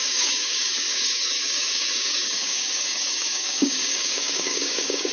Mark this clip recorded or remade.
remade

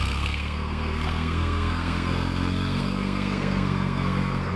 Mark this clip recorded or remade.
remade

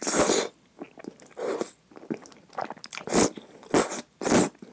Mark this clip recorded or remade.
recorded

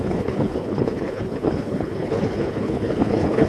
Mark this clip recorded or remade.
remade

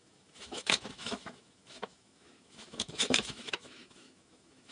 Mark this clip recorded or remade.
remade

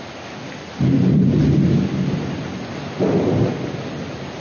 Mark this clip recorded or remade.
recorded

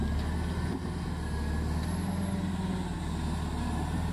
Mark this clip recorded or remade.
recorded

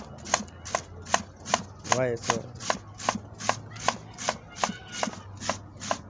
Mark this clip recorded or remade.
recorded